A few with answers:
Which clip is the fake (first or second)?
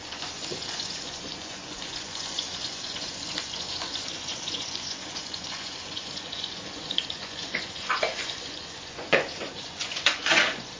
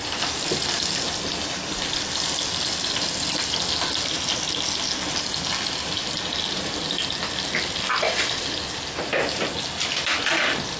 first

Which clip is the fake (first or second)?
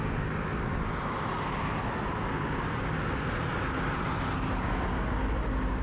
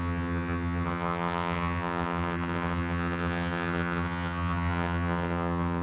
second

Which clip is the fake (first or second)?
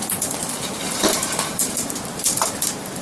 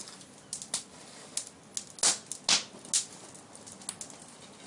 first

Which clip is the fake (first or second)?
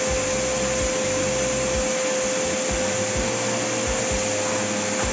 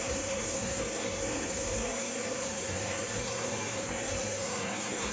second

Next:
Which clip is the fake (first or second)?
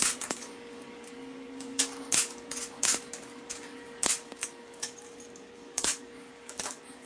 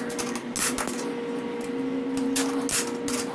first